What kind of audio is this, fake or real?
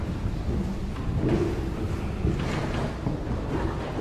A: real